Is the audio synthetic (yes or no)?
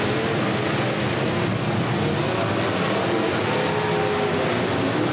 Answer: no